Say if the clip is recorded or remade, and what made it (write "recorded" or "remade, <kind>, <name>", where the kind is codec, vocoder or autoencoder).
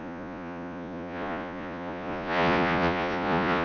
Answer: remade, vocoder, Vocos